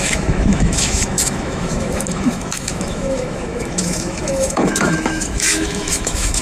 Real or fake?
fake